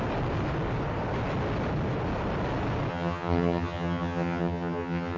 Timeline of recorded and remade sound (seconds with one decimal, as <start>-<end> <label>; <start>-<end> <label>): 0.0-2.9 recorded; 2.9-5.2 remade